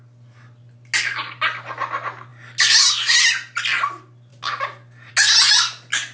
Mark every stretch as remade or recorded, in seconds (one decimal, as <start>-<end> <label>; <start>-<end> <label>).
0.0-6.1 recorded